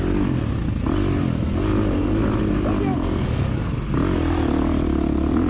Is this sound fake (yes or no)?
no